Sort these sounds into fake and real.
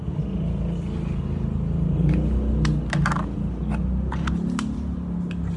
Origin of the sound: real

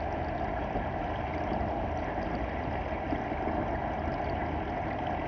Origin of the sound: real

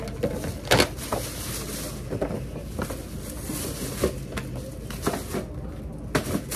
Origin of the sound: real